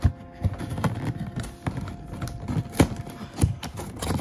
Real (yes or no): yes